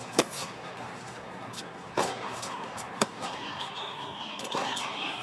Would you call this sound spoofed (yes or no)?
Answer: yes